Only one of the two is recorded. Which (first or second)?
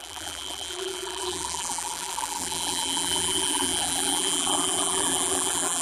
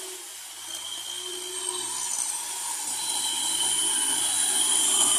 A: second